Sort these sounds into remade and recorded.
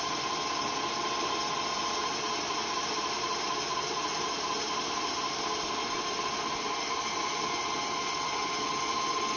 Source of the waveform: recorded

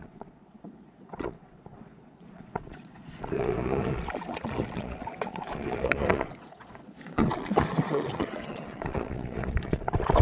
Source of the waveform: remade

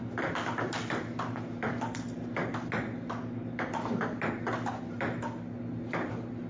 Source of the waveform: recorded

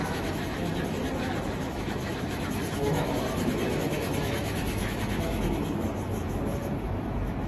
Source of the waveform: remade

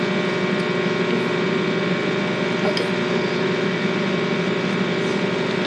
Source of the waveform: recorded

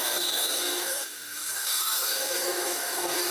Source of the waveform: remade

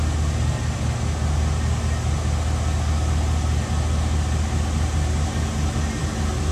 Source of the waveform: recorded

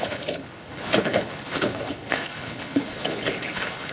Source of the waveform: remade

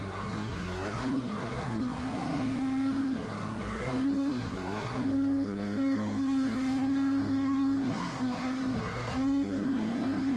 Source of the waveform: remade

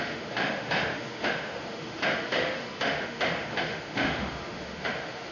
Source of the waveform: remade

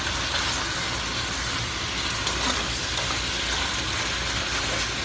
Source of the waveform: recorded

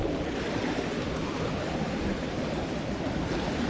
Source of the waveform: recorded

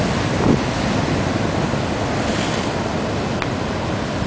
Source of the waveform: recorded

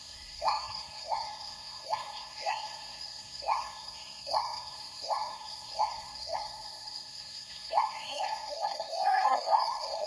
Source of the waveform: remade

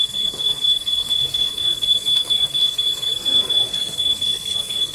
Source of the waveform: remade